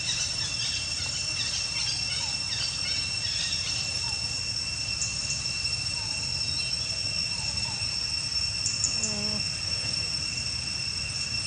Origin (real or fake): real